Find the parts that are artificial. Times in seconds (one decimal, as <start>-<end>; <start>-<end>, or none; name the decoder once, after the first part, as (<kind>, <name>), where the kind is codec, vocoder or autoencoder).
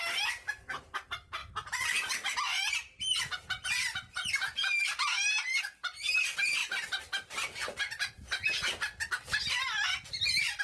none